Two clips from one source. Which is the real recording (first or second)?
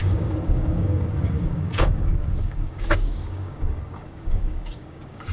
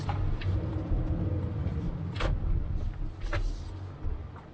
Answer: second